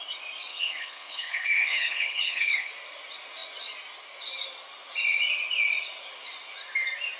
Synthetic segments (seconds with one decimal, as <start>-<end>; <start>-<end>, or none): 0.5-2.7